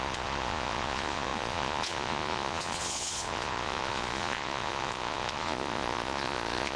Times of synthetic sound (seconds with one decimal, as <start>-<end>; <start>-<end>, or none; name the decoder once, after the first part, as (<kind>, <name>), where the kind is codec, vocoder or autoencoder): 0.0-6.8 (vocoder, Vocos)